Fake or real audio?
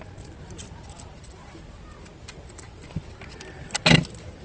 real